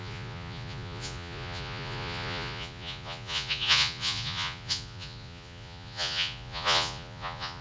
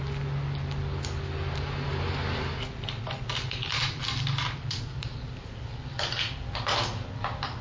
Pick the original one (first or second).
second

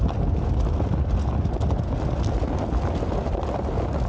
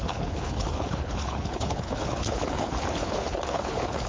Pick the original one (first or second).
first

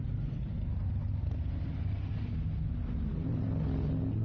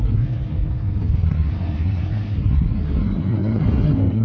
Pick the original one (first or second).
first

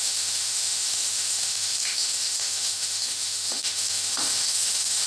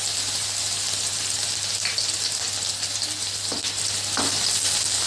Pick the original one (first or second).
second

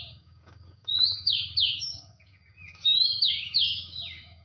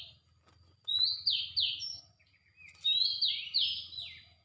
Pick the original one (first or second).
second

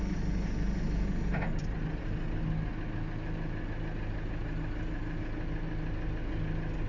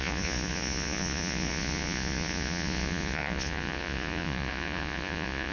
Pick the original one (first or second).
first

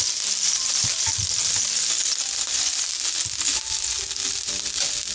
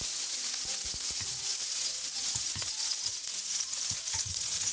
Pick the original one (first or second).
first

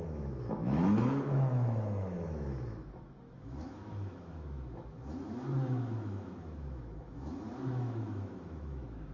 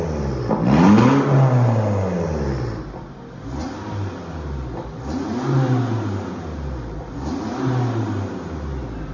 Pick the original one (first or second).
second